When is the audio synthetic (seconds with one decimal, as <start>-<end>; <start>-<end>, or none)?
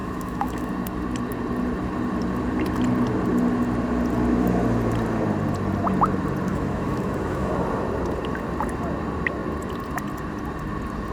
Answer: 0.0-0.7; 6.5-7.5